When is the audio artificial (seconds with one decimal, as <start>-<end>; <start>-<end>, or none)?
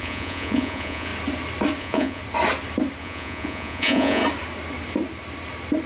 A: 0.0-1.1; 1.8-2.2; 3.0-4.2